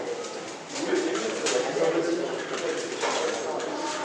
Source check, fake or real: real